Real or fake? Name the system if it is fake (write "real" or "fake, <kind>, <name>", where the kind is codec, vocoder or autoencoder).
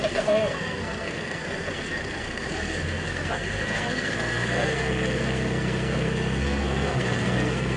fake, codec, SNAC